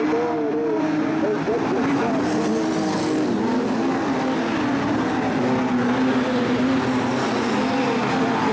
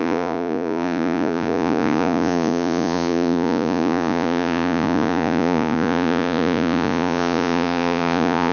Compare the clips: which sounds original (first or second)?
first